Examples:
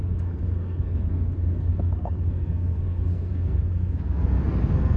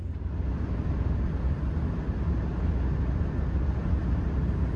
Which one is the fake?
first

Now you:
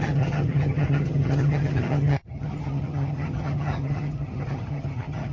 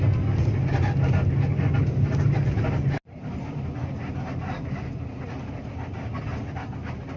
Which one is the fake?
first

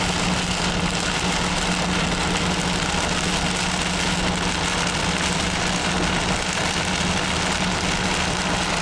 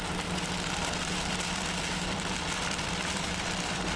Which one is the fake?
second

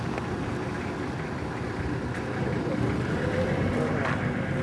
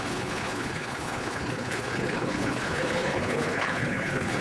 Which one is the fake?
second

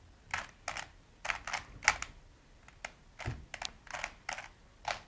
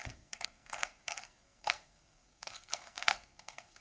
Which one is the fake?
second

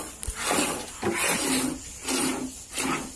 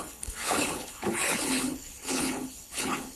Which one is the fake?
second